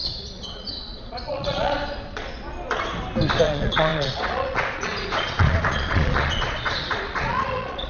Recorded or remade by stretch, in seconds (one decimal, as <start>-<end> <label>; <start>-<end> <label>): 0.0-1.8 remade; 1.8-3.4 recorded; 3.4-7.9 remade